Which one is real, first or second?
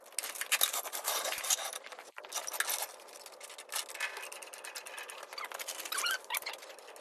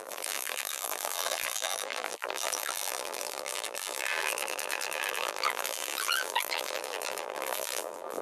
first